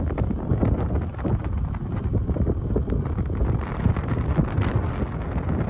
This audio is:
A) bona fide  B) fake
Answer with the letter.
A